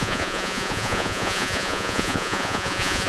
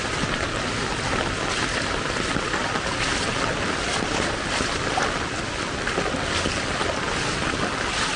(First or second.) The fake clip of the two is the first